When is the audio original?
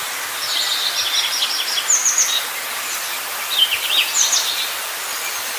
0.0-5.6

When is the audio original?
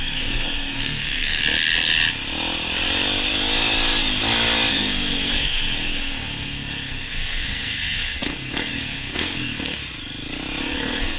1.4-4.7; 9.8-10.6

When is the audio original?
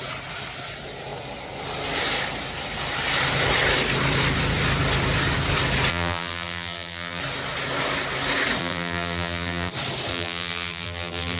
0.0-5.9; 7.2-8.6; 9.7-10.1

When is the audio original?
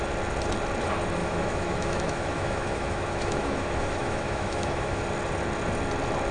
0.0-1.2; 5.0-6.3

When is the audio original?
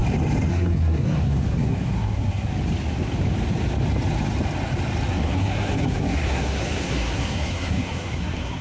0.0-0.5; 2.5-5.1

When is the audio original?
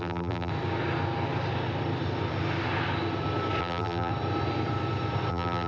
0.5-3.6; 4.1-5.3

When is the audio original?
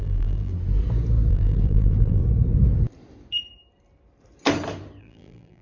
0.5-1.3; 2.2-5.0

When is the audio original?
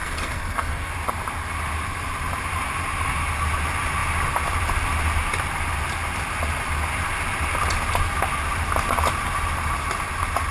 0.9-10.5